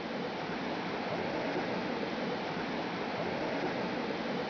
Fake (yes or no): no